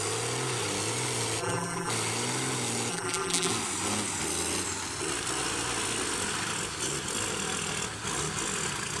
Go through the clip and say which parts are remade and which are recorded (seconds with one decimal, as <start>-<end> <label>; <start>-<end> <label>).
0.0-1.4 recorded; 1.4-1.9 remade; 1.9-2.9 recorded; 2.9-3.5 remade; 3.5-9.0 recorded